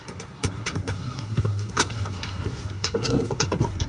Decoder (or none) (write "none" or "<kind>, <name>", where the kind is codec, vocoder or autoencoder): codec, SNAC